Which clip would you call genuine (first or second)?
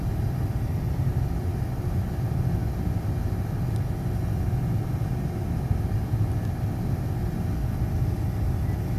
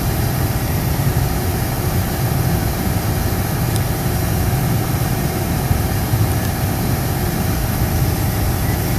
first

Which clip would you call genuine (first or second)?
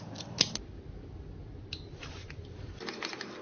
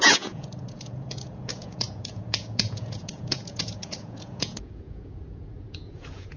first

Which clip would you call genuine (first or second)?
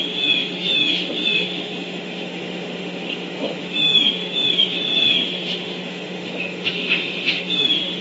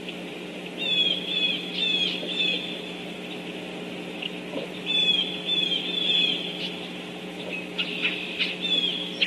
second